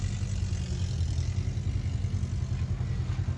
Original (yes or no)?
yes